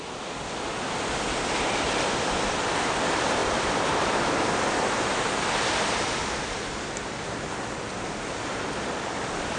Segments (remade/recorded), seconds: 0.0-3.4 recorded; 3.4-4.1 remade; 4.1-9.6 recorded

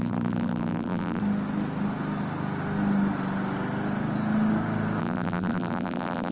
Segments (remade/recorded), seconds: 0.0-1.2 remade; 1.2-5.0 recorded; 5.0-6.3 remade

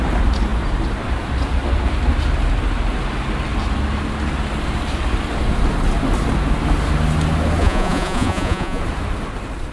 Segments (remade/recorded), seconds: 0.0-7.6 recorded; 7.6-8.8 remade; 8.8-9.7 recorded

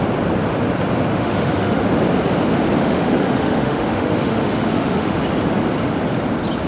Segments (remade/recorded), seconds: 0.0-1.1 recorded; 1.1-1.8 remade; 1.8-2.8 recorded; 2.8-5.2 remade; 5.2-6.7 recorded